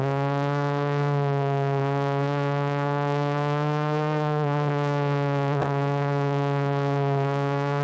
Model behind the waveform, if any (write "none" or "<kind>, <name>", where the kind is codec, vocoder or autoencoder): codec, SNAC